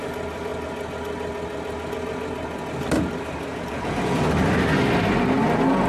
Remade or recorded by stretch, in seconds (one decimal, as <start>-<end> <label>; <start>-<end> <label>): 0.0-3.5 recorded; 3.5-4.2 remade; 4.2-5.9 recorded